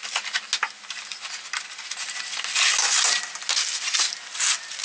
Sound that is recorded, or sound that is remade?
recorded